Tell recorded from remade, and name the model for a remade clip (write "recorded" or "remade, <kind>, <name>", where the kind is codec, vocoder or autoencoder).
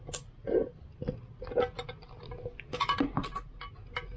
recorded